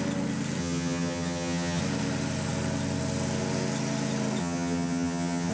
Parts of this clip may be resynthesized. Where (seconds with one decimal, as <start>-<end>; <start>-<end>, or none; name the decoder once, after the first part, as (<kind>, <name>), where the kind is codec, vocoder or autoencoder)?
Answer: 0.6-1.8 (vocoder, HiFi-GAN); 4.4-5.5